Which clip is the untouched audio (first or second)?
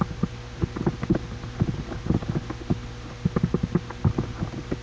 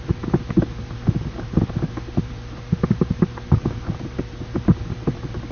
first